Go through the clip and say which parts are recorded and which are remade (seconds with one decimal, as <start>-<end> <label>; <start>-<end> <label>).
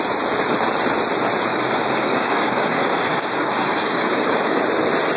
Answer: 0.0-1.5 recorded; 1.5-4.6 remade; 4.6-5.2 recorded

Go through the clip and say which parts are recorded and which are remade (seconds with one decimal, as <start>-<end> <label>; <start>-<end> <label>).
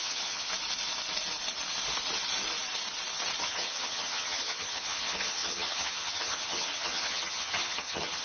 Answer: 0.0-0.5 remade; 0.5-3.4 recorded; 3.4-8.2 remade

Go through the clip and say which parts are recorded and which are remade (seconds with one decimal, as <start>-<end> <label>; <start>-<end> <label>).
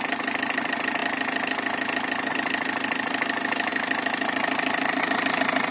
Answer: 0.0-5.7 recorded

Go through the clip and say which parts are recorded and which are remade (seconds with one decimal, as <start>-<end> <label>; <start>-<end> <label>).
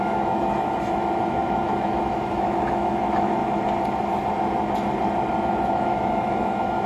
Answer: 0.0-3.4 remade; 3.4-5.7 recorded; 5.7-6.9 remade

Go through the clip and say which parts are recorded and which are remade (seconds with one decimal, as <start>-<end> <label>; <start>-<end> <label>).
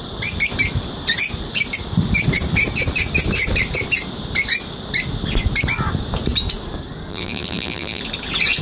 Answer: 0.0-7.1 recorded; 7.1-8.0 remade; 8.0-8.6 recorded